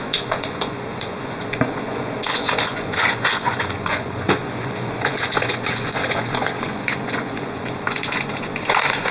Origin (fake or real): fake